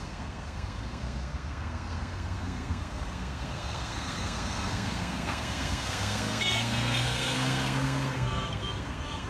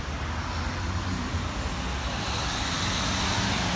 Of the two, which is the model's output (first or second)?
first